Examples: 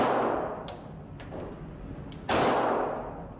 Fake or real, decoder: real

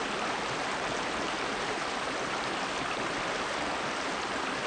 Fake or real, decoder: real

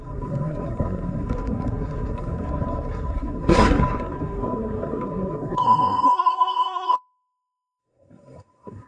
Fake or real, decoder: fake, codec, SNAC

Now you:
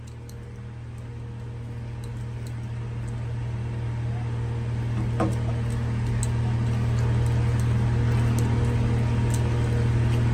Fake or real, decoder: real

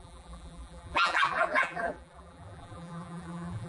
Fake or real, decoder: fake, vocoder, BigVGAN v2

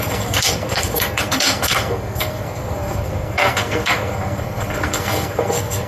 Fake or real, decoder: fake, codec, SNAC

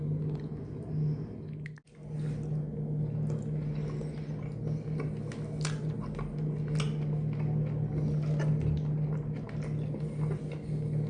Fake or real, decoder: real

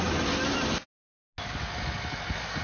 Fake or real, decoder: real